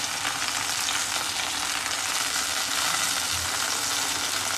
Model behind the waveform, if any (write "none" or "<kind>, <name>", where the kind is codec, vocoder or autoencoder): none